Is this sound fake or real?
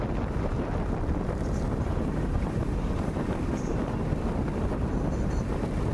real